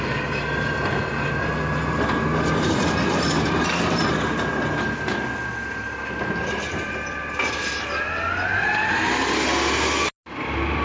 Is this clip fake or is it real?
real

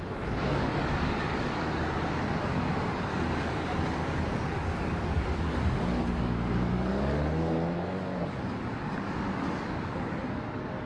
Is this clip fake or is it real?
fake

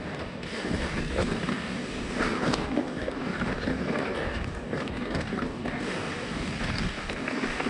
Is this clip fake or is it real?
fake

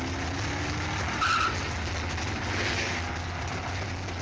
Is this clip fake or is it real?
real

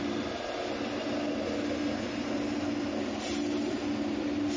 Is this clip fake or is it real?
real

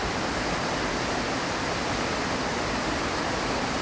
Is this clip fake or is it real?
real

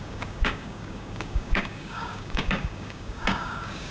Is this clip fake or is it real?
fake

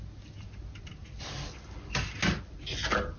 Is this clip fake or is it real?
real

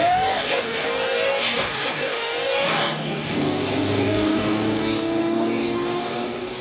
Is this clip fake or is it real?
fake